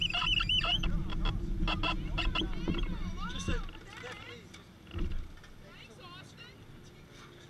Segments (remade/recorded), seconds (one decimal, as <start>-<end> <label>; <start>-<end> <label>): 0.0-7.5 recorded